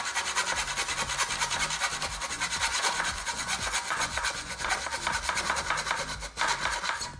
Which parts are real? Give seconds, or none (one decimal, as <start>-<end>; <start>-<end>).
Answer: 0.0-2.7; 4.7-7.2